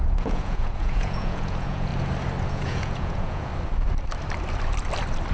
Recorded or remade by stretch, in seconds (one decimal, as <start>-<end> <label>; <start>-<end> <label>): 0.0-1.9 remade; 1.9-2.5 recorded; 2.5-3.5 remade; 3.5-5.3 recorded